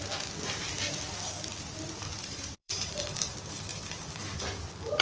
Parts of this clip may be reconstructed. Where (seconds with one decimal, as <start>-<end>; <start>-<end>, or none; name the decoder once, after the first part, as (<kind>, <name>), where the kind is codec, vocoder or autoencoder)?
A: 2.1-2.9 (vocoder, BigVGAN v2); 3.7-4.4